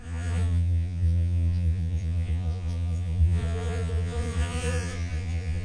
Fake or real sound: fake